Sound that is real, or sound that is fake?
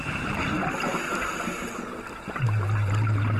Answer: real